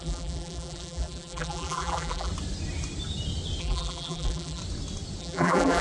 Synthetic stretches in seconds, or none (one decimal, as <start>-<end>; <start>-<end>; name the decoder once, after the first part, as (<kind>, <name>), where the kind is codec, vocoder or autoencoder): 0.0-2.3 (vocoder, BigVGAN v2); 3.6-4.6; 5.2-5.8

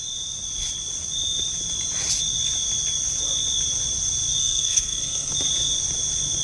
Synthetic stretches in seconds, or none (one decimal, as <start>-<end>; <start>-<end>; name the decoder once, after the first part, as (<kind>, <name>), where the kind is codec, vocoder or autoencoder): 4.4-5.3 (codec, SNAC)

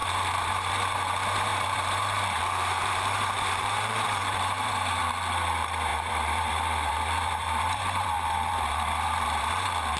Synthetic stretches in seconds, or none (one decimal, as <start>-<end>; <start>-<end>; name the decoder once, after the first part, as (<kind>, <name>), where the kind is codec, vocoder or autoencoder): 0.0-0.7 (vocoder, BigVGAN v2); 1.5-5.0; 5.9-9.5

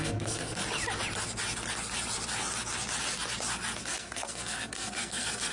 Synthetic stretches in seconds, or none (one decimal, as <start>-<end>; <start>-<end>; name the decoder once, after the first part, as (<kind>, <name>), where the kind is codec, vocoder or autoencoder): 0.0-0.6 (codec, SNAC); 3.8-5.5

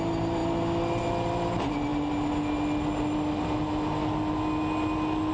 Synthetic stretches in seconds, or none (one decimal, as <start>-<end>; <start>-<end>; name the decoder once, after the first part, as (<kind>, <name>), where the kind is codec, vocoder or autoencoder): none

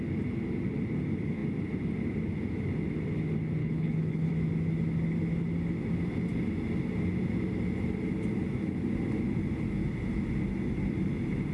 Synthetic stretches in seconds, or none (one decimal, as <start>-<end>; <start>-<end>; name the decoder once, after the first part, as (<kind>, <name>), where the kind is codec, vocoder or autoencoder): 3.6-4.3 (codec, HILCodec)

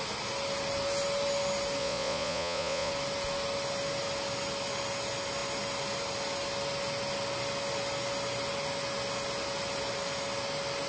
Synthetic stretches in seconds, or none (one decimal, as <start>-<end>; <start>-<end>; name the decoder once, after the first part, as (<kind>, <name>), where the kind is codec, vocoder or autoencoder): 1.8-2.9 (vocoder, Vocos)